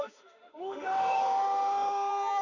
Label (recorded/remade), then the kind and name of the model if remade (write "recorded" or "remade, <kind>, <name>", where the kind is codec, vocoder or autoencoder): remade, autoencoder, DAC-VAE